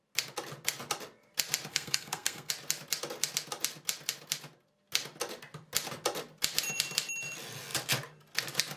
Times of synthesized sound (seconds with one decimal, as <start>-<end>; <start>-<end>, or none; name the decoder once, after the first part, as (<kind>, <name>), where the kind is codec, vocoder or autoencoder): 1.7-2.5 (codec, SNAC)